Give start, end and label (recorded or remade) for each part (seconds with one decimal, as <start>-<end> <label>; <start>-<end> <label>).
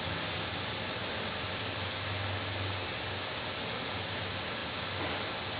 0.0-5.6 recorded